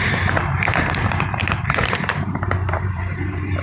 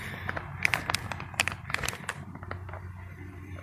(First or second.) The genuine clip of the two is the second